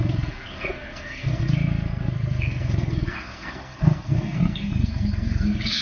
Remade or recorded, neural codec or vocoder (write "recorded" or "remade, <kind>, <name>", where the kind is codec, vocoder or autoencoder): remade, codec, SNAC